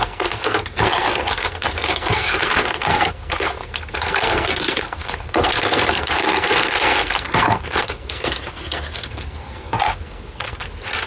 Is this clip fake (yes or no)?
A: yes